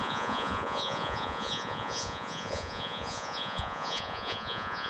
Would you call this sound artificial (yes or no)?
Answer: yes